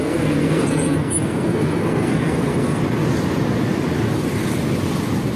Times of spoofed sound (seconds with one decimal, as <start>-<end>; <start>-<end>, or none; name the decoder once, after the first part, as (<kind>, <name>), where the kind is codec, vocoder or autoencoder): 0.0-2.8 (codec, SNAC)